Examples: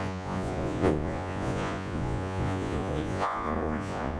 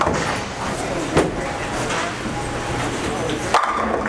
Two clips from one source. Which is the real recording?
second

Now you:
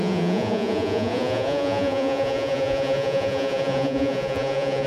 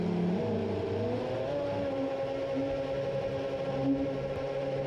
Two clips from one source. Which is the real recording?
second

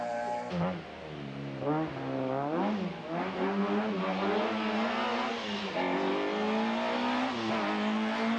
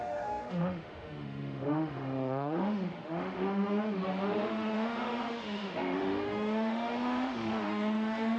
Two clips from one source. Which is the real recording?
first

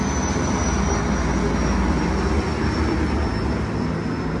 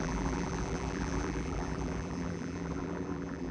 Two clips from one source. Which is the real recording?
first